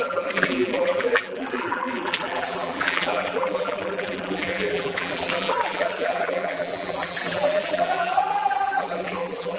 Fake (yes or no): yes